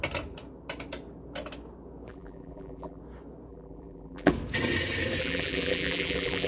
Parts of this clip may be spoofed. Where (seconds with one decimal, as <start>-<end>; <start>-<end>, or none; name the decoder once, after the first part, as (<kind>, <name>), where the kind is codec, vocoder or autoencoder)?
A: 2.1-3.0 (vocoder, BigVGAN v2); 3.5-4.3; 5.2-6.5

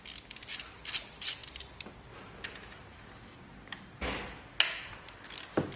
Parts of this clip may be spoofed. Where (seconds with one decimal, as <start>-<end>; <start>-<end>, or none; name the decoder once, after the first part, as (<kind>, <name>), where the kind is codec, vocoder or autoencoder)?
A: none